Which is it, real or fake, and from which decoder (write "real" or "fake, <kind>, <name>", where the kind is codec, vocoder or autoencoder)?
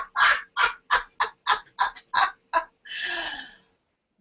real